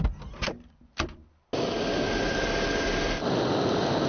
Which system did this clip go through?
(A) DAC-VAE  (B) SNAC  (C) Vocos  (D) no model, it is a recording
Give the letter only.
D